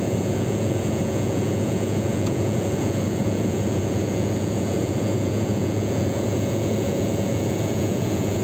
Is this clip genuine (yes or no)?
no